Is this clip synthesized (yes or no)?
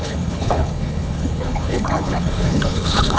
yes